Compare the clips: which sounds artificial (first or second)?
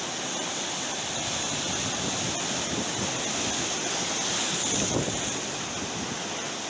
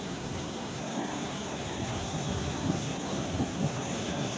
second